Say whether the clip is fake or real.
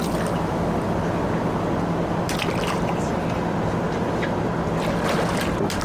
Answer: real